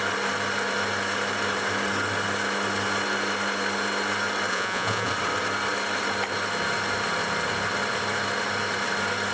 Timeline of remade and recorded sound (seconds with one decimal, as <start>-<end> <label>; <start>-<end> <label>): 0.0-4.5 recorded; 4.5-5.1 remade; 5.1-9.3 recorded